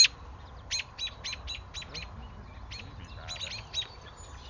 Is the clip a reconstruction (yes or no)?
no